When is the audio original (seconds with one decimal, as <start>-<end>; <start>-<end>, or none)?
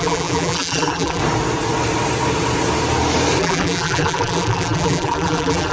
1.2-3.4